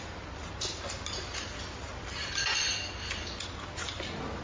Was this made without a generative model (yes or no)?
yes